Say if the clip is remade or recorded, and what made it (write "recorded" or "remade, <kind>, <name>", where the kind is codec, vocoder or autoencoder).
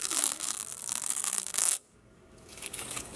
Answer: remade, codec, DAC